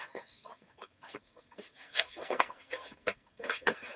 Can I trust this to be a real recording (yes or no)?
no